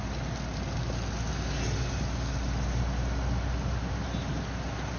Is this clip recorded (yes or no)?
yes